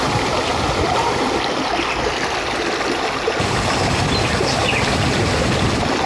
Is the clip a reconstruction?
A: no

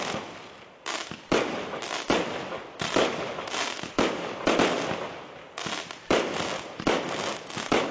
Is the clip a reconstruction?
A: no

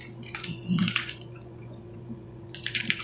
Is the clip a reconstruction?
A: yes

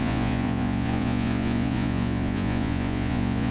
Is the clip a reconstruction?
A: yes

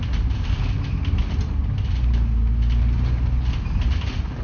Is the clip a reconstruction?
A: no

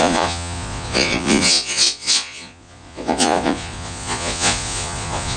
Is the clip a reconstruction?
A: yes